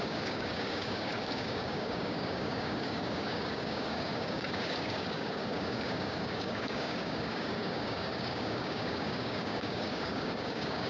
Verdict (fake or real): fake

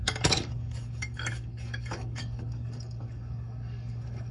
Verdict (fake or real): fake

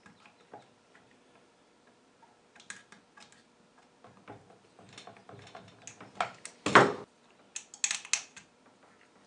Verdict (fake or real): real